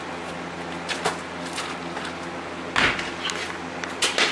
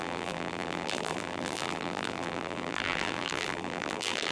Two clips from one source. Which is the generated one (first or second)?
second